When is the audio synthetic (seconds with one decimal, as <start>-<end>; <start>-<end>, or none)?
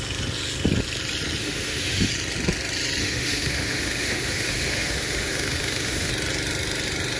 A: 1.4-2.1; 3.0-6.1